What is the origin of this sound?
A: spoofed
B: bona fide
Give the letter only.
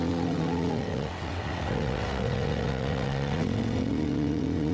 A